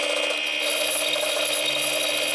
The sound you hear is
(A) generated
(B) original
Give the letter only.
B